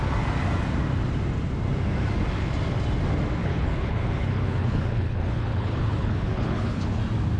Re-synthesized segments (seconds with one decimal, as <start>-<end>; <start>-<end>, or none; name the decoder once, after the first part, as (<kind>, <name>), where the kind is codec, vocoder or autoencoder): 3.4-7.0 (codec, HILCodec)